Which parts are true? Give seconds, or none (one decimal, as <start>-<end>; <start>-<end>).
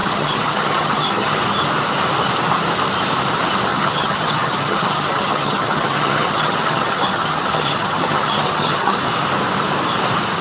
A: 1.4-3.7; 9.0-10.4